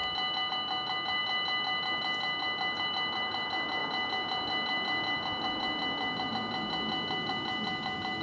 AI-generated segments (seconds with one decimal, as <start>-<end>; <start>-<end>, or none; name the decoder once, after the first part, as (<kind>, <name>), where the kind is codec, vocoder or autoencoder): none